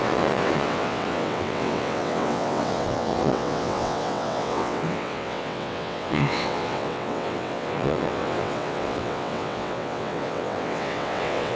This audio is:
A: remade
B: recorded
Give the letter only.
A